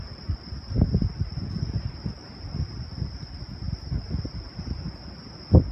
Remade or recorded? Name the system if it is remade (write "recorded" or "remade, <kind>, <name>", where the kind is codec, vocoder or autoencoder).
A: recorded